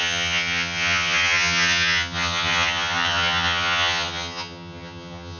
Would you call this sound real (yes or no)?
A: no